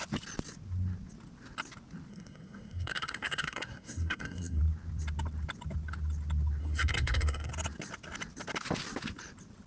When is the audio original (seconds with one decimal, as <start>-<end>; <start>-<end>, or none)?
0.0-2.1; 4.6-6.6; 7.5-9.7